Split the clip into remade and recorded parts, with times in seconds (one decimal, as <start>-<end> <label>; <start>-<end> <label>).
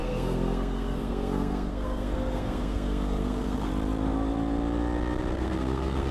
0.0-3.7 remade; 3.7-5.3 recorded; 5.3-6.1 remade